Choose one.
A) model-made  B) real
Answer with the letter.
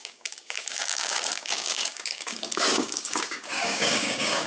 A